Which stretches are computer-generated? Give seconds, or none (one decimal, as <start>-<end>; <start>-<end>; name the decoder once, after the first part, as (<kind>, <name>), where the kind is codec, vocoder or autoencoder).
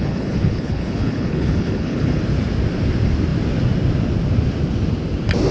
0.0-2.2 (codec, HILCodec)